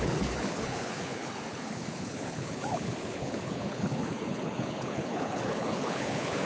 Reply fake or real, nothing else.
fake